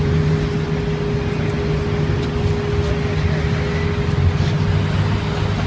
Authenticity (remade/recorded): recorded